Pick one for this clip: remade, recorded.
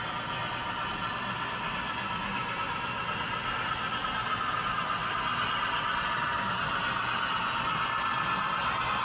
recorded